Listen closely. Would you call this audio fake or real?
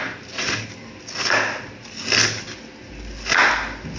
real